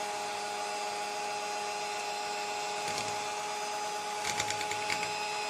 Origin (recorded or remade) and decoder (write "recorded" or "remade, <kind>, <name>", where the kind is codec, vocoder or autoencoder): recorded